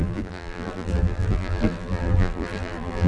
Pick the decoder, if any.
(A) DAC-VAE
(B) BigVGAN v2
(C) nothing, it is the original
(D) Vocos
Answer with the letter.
B